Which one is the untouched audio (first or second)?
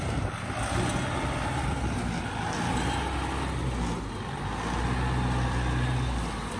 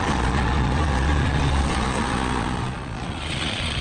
first